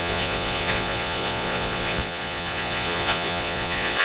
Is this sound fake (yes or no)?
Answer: yes